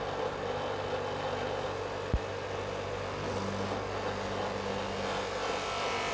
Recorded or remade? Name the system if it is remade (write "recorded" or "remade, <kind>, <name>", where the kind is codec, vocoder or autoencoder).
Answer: recorded